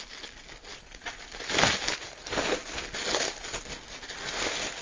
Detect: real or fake real